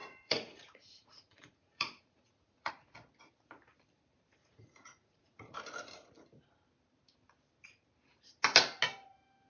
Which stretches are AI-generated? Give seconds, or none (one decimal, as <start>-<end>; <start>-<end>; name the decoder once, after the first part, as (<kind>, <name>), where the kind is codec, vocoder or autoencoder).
0.0-2.7 (vocoder, Vocos); 4.4-5.6